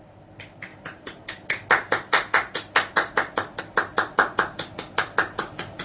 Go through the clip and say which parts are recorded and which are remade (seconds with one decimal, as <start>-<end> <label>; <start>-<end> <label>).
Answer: 0.0-5.8 recorded